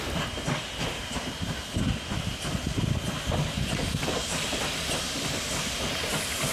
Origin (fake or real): real